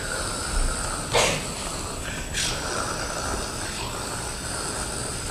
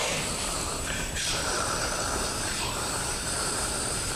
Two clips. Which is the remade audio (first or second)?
second